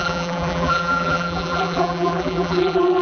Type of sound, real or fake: fake